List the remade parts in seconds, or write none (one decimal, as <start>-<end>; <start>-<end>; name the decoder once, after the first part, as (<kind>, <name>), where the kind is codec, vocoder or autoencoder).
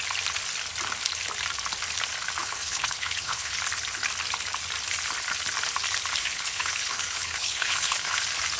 2.4-3.6 (codec, HILCodec); 6.2-8.2